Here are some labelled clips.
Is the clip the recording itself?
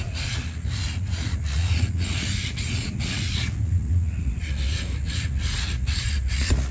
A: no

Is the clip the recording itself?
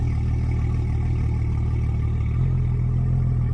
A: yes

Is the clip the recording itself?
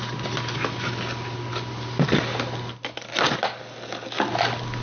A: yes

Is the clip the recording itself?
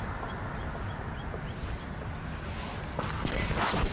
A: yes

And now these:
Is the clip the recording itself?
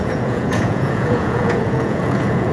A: no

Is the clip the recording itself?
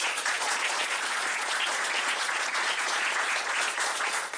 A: no